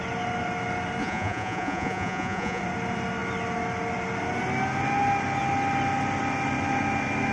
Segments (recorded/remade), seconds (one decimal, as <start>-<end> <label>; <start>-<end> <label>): 0.0-1.0 recorded; 1.0-2.6 remade; 2.6-7.3 recorded